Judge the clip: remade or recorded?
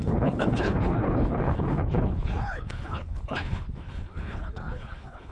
remade